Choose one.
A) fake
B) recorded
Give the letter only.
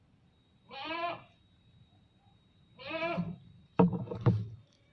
A